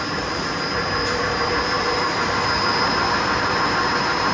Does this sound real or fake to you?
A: fake